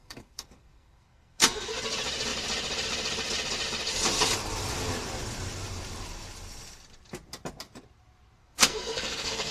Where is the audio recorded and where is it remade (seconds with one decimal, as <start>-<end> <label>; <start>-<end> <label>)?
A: 0.0-1.7 remade; 1.7-8.4 recorded; 8.4-9.5 remade